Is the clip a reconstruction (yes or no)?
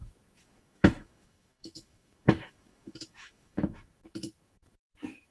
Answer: yes